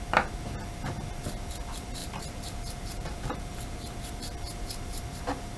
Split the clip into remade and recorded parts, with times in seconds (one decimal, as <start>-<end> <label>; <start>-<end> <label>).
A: 0.0-2.0 recorded; 2.0-4.1 remade; 4.1-5.6 recorded